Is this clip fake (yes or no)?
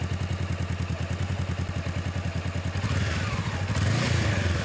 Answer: no